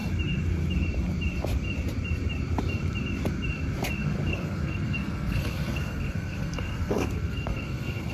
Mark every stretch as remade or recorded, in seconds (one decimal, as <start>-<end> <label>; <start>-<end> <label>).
0.0-4.3 recorded; 4.3-8.1 remade